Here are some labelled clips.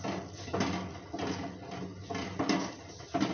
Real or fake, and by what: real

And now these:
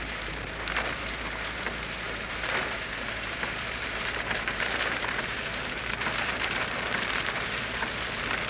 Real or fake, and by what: fake, vocoder, BigVGAN v2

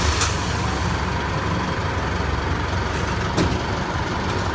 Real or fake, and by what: real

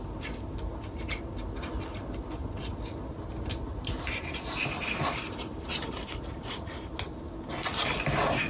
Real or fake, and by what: real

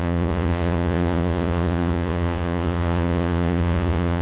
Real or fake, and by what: fake, vocoder, Vocos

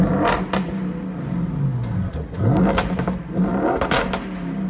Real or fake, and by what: real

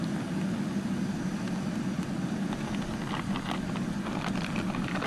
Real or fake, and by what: real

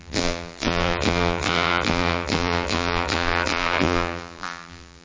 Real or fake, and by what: fake, vocoder, BigVGAN v2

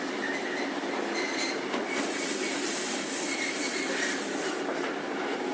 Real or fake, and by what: real